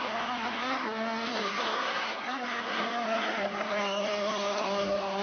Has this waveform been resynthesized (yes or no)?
yes